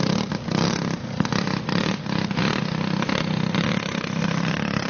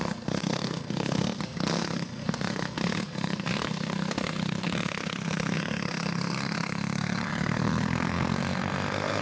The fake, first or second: second